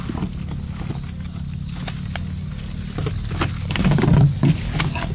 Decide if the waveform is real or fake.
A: real